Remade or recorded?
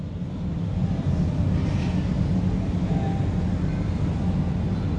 recorded